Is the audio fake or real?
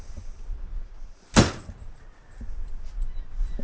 real